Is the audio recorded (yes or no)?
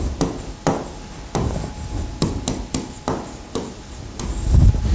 yes